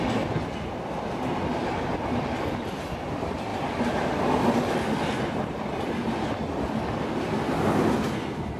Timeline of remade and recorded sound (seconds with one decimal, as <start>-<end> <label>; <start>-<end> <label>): 0.0-8.6 recorded